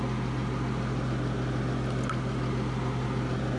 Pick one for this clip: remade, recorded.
recorded